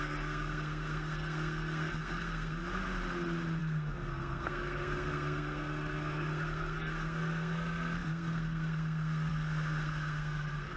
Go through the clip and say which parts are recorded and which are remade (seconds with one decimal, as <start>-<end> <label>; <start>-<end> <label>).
0.0-2.6 remade; 2.6-3.6 recorded; 3.6-10.8 remade